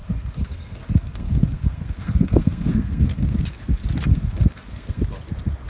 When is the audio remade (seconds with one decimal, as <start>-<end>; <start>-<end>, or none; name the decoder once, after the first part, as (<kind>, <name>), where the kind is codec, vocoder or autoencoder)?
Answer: 0.0-3.4 (codec, SNAC); 4.1-5.0